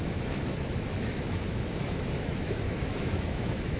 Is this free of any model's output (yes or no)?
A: no